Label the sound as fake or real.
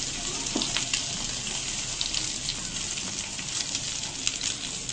real